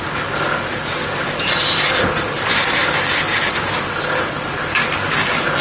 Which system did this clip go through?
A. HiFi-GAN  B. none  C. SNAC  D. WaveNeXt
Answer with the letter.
B